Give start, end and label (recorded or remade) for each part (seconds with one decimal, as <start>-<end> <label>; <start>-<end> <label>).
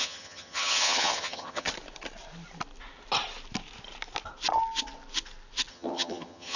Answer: 0.0-1.7 remade; 1.7-5.7 recorded; 5.7-6.6 remade